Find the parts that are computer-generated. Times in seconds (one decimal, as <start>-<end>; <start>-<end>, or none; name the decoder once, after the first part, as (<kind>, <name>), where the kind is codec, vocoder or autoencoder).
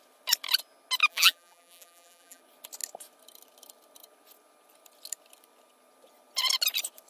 1.1-2.4 (vocoder, BigVGAN v2)